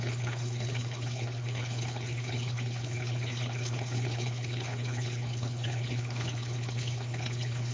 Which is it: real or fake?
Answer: fake